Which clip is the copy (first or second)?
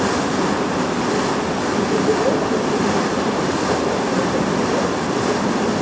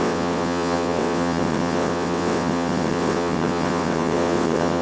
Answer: second